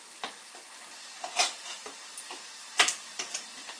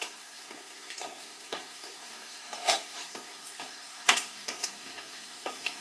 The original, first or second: first